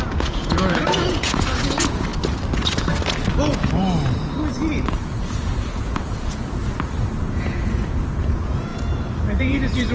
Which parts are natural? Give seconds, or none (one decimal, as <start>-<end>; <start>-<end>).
2.1-5.7; 6.6-7.3; 8.7-9.4